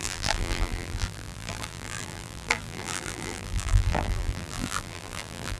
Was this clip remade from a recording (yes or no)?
yes